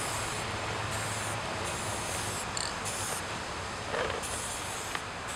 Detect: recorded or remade recorded